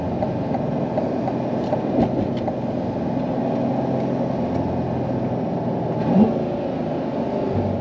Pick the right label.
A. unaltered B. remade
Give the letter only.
A